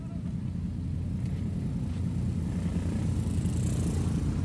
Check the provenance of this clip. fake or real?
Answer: real